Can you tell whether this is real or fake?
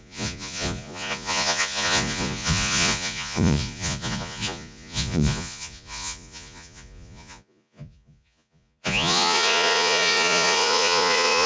fake